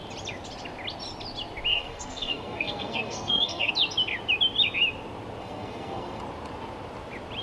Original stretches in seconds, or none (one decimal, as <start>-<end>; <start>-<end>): 0.0-1.7; 3.7-5.4; 6.2-7.4